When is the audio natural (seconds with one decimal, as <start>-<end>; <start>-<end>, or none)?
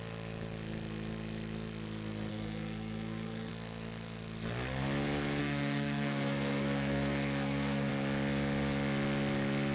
0.0-2.3; 3.5-5.4; 7.9-9.7